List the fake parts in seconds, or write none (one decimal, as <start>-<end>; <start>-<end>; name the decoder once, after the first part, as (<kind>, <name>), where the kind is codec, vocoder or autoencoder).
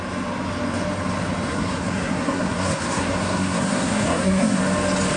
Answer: 1.5-4.6 (codec, SNAC)